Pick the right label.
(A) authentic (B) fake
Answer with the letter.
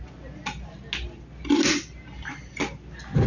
A